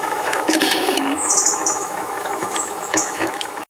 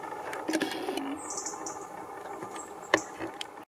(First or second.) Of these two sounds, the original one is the second